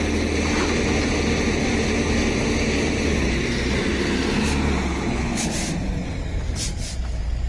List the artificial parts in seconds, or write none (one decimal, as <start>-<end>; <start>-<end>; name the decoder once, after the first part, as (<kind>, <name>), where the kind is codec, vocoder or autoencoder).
4.9-5.5 (codec, HILCodec)